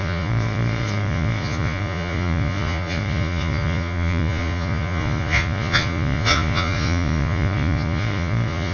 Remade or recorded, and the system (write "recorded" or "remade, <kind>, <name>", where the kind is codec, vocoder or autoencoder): remade, vocoder, Vocos